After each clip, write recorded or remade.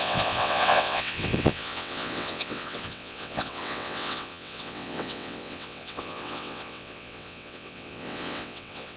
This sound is remade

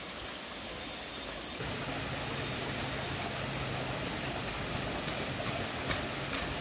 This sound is recorded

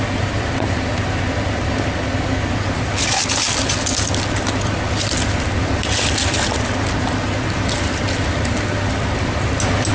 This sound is recorded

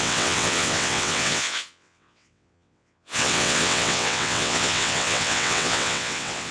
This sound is remade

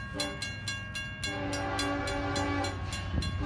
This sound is recorded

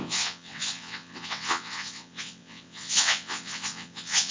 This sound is remade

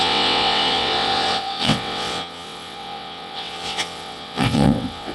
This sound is remade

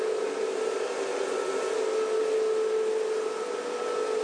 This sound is recorded